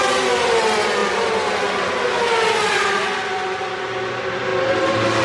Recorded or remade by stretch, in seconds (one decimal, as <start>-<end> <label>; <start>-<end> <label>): 0.0-5.2 recorded